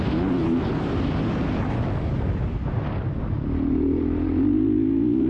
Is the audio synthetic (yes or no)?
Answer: no